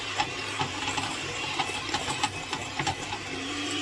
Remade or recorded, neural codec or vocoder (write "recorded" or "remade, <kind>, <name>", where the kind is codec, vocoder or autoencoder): remade, vocoder, BigVGAN v2